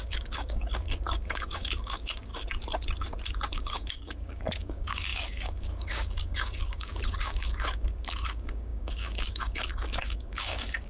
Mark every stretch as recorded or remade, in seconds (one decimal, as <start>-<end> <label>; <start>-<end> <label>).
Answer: 0.0-2.3 remade; 2.3-3.5 recorded; 3.5-10.9 remade